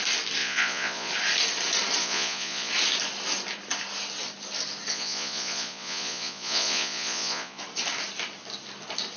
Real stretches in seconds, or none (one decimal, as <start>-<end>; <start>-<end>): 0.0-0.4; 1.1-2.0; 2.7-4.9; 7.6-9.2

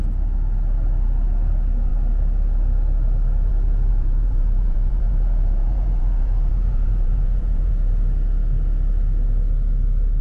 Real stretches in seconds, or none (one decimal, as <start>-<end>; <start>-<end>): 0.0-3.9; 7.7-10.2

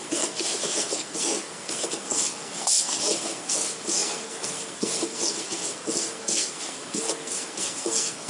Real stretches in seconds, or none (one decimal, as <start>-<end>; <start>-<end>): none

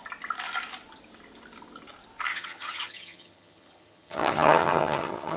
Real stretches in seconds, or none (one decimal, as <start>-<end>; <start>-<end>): 0.0-2.3